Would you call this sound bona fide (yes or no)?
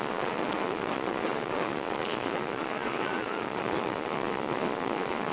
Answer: no